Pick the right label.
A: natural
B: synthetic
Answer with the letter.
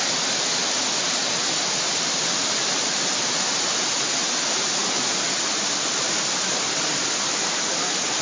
A